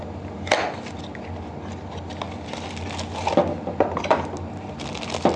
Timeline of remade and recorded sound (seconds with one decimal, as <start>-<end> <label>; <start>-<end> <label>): 0.0-5.4 recorded